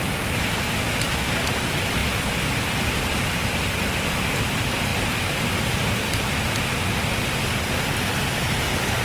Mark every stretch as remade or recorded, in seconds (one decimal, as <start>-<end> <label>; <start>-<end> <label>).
0.0-4.9 recorded; 4.9-6.4 remade; 6.4-9.0 recorded